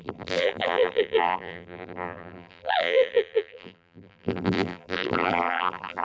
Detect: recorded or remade remade